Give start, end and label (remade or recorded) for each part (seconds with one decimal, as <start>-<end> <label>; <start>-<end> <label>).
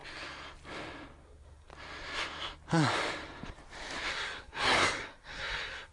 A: 0.0-1.2 recorded; 1.2-1.7 remade; 1.7-4.1 recorded; 4.1-5.9 remade